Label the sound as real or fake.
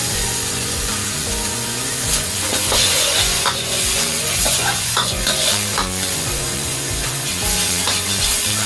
fake